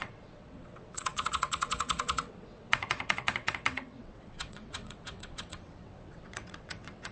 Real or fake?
fake